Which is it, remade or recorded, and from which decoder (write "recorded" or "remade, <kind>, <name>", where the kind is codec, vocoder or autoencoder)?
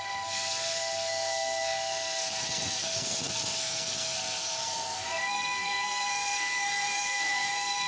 remade, codec, SNAC